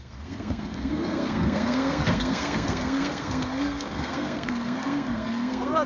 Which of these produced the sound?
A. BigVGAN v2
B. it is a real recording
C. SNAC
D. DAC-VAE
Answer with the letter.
C